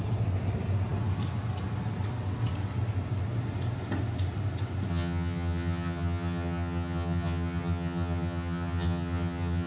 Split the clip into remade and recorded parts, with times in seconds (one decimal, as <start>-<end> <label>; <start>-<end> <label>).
0.0-4.9 recorded; 4.9-9.7 remade